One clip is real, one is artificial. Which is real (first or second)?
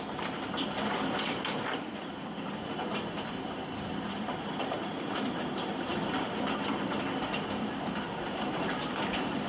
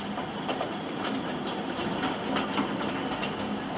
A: second